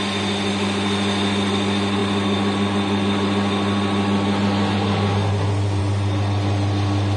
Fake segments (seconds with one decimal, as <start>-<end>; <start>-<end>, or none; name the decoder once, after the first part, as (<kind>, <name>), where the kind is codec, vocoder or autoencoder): none